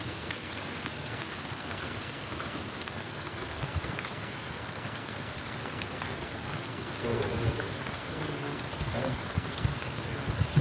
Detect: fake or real fake